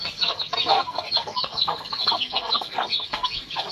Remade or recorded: remade